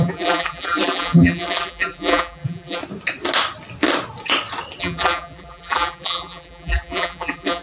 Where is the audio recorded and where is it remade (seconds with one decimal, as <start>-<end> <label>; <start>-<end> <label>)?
0.0-2.8 remade; 2.8-4.8 recorded; 4.8-7.6 remade